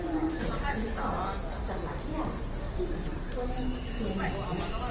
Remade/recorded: recorded